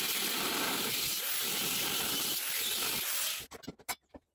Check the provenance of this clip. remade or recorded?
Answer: remade